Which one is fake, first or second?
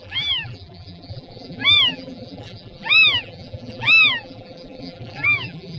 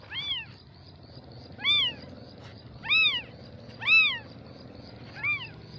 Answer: first